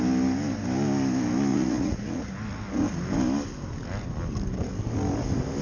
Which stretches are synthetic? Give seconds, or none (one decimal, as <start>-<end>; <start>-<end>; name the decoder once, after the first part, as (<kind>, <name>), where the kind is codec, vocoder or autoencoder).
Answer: 1.5-2.3 (vocoder, Vocos)